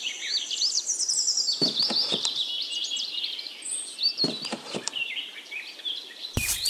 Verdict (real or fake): fake